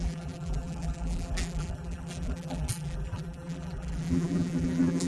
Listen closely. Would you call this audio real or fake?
fake